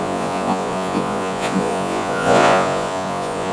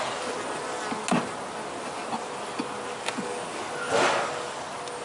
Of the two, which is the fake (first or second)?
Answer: first